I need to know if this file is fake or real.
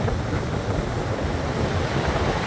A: real